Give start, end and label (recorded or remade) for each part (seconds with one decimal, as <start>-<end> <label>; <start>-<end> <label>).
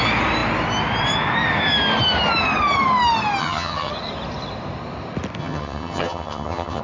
0.0-3.4 recorded; 3.4-3.9 remade; 3.9-5.4 recorded; 5.4-6.8 remade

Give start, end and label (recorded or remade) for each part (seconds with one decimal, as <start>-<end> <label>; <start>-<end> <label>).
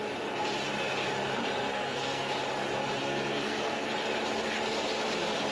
0.0-1.6 recorded; 1.6-2.3 remade; 2.3-3.0 recorded; 3.0-3.9 remade; 3.9-5.5 recorded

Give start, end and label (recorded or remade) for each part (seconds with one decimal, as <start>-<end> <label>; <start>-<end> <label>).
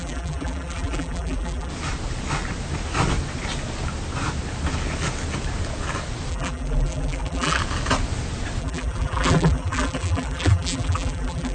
0.0-1.7 remade; 1.7-6.3 recorded; 6.3-7.6 remade; 7.6-8.6 recorded; 8.6-11.5 remade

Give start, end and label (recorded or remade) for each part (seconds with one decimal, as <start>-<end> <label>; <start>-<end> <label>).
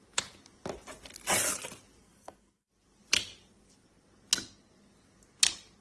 0.0-2.0 recorded; 2.0-2.7 remade; 2.7-5.8 recorded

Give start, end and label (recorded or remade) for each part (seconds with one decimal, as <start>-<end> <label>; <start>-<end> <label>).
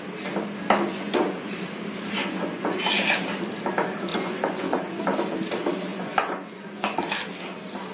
0.0-0.9 recorded; 0.9-1.5 remade; 1.5-2.2 recorded; 2.2-2.8 remade; 2.8-4.1 recorded; 4.1-5.0 remade; 5.0-5.9 recorded; 5.9-7.0 remade; 7.0-7.9 recorded